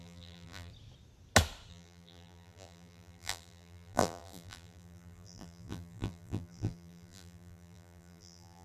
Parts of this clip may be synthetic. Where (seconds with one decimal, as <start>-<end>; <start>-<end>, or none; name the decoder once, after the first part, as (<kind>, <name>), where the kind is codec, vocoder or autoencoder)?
0.0-0.7 (vocoder, BigVGAN v2); 1.7-8.6